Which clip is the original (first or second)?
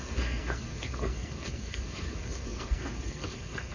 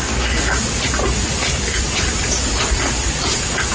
second